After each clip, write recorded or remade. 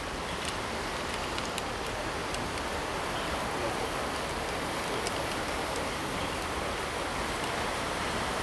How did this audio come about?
recorded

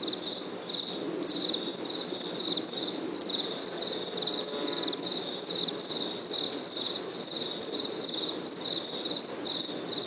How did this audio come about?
recorded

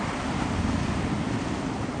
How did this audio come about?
recorded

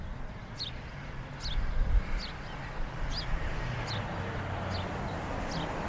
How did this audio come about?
recorded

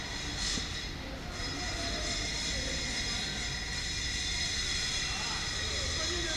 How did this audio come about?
recorded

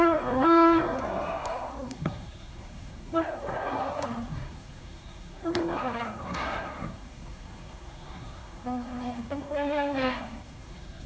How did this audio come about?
remade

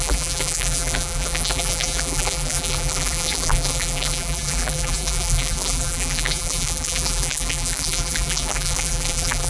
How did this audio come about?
remade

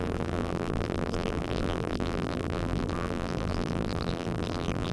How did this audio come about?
remade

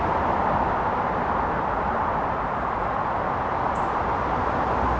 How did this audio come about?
recorded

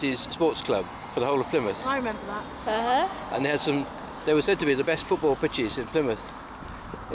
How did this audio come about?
recorded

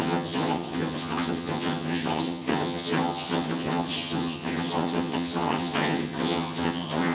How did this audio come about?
remade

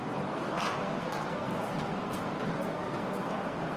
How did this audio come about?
remade